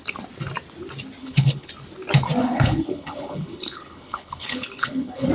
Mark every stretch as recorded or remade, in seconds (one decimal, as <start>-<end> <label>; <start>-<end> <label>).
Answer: 0.0-1.2 recorded; 1.2-1.7 remade; 1.7-2.4 recorded; 2.4-5.3 remade